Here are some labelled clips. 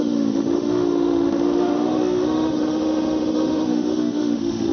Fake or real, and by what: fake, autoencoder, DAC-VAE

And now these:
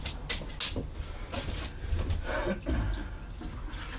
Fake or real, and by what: real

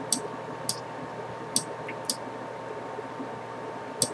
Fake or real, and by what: real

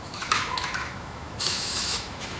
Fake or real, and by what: fake, autoencoder, DAC-VAE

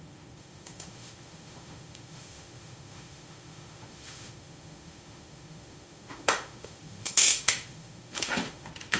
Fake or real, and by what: fake, autoencoder, DAC-VAE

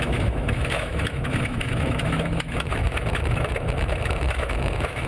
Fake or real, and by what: fake, autoencoder, DAC-VAE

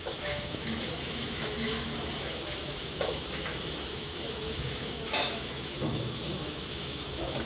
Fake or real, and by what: fake, autoencoder, DAC-VAE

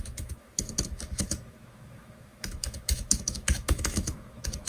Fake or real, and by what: fake, autoencoder, DAC-VAE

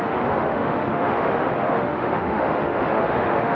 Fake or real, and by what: fake, autoencoder, DAC-VAE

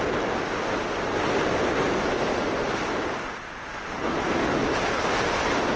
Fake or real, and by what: real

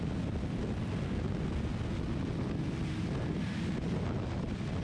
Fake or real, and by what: real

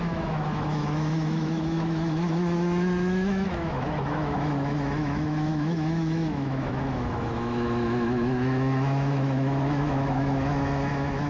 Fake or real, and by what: fake, autoencoder, DAC-VAE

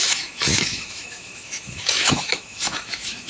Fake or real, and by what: fake, autoencoder, DAC-VAE